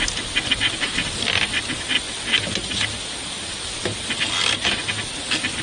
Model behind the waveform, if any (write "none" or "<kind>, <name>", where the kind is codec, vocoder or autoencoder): none